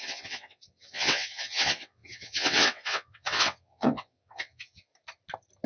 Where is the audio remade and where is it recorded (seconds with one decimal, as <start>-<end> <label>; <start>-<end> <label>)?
0.0-4.9 remade; 4.9-5.7 recorded